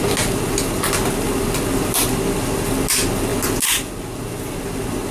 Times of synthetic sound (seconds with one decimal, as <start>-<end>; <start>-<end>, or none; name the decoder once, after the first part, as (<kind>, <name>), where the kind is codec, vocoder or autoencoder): none